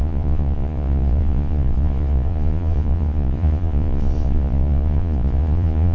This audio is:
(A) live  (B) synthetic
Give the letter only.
B